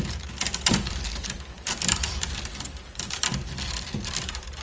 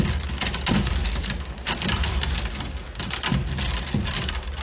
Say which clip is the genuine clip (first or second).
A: second